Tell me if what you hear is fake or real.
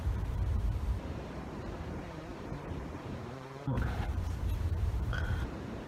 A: fake